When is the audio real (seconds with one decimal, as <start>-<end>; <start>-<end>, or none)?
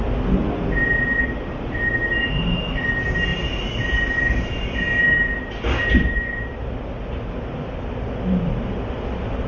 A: 0.0-0.4; 2.6-3.3; 4.4-9.5